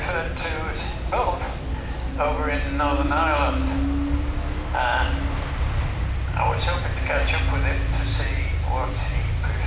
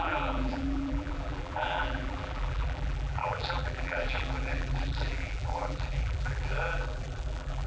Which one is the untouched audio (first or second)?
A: first